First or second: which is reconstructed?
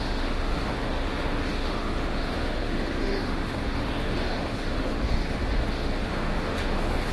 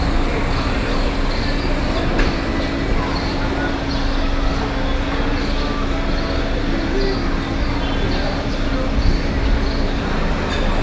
first